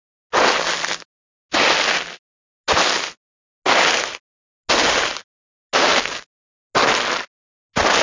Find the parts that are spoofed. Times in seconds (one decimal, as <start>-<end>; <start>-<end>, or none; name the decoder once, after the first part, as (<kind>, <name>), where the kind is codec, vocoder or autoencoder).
none

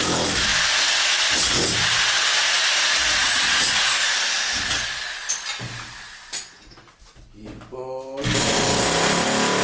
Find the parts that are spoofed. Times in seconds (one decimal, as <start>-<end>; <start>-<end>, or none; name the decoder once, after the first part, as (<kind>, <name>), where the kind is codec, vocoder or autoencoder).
3.2-3.8 (vocoder, Vocos)

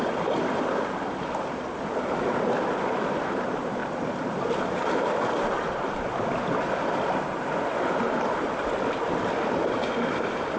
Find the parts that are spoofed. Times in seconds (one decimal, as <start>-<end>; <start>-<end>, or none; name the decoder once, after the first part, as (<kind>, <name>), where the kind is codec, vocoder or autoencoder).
none

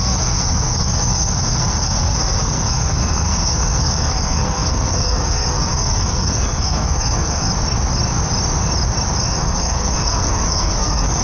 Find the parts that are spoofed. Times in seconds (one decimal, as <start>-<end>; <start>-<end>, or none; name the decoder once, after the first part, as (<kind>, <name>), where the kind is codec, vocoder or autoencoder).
0.0-7.5 (codec, SNAC); 9.2-11.2